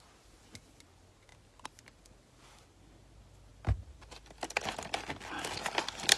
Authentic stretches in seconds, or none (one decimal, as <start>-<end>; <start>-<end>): 0.0-6.2